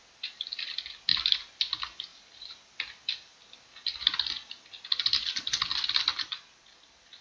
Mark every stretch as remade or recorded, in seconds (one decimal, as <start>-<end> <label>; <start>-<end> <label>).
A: 0.0-2.1 recorded; 2.1-2.7 remade; 2.7-6.1 recorded; 6.1-7.2 remade